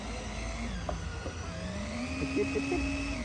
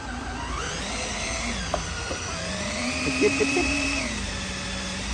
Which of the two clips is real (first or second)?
first